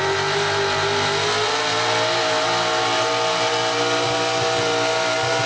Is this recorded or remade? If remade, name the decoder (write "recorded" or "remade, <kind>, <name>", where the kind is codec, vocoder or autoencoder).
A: recorded